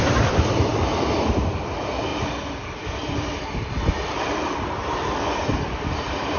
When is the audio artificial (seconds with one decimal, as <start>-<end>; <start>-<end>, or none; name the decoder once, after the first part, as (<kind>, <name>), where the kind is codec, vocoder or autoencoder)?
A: 0.0-0.7 (vocoder, BigVGAN v2); 1.3-6.4